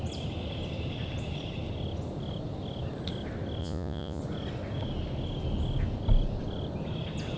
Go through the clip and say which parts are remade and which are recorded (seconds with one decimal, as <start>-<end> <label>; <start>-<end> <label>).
0.0-3.6 recorded; 3.6-4.2 remade; 4.2-7.4 recorded